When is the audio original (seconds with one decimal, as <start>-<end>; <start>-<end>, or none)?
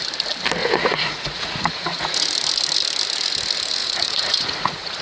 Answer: 0.0-0.6; 2.0-3.8